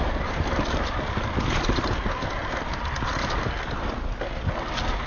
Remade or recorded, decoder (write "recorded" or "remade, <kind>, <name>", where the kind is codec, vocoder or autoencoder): recorded